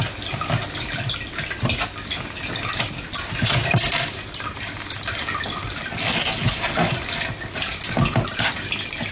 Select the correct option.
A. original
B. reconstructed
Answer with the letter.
A